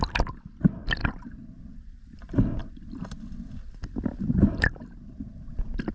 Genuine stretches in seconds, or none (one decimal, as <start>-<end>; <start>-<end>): 0.0-5.9